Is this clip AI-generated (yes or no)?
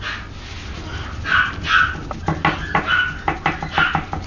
no